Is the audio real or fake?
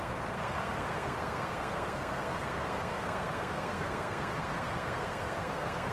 fake